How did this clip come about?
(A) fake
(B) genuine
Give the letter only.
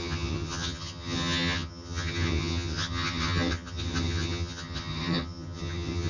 A